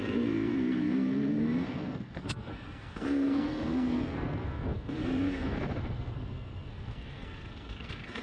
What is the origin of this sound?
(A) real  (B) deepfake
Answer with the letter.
B